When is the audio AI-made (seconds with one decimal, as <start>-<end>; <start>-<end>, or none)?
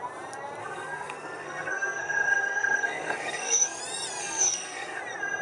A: 0.6-3.8; 4.2-5.0